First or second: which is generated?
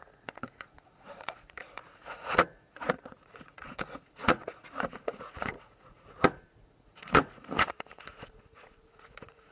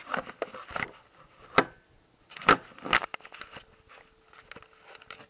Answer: first